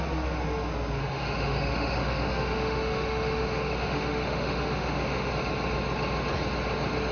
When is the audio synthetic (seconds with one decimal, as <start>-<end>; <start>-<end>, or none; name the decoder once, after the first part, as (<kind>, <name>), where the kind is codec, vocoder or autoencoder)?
1.0-5.3 (autoencoder, DAC-VAE)